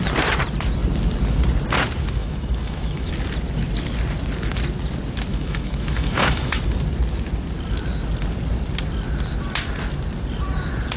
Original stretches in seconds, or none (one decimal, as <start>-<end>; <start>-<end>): 0.0-2.2; 3.1-5.3; 6.6-11.0